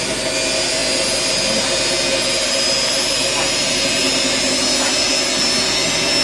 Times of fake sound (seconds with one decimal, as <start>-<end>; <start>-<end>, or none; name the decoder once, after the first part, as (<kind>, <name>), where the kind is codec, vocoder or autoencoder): none